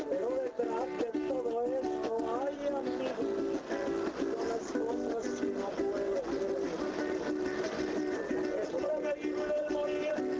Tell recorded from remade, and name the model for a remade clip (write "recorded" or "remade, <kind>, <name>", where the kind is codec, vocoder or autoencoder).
recorded